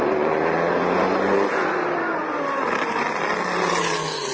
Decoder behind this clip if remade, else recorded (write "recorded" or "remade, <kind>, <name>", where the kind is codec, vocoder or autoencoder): recorded